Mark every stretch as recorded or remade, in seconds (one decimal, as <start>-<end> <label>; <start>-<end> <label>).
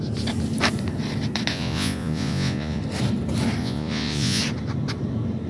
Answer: 0.0-1.5 recorded; 1.5-2.8 remade; 2.8-3.6 recorded; 3.6-4.4 remade; 4.4-5.5 recorded